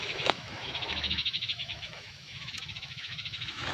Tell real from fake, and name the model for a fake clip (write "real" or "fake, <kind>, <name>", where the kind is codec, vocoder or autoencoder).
fake, autoencoder, DAC-VAE